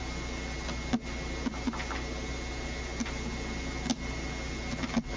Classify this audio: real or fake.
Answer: real